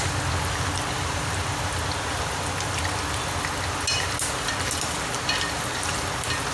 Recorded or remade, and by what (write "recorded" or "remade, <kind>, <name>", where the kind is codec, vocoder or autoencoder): recorded